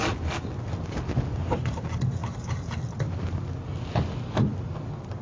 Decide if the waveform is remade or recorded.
recorded